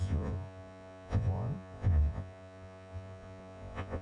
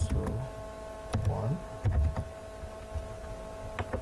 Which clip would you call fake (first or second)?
first